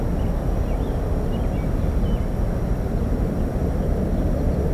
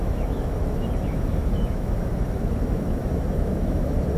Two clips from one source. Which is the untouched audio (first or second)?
first